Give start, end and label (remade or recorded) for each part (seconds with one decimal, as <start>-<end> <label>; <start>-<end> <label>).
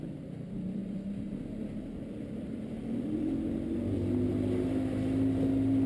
0.0-0.8 recorded; 0.8-4.3 remade; 4.3-5.9 recorded